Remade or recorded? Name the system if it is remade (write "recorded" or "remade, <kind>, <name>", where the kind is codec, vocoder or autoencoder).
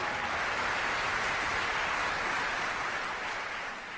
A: recorded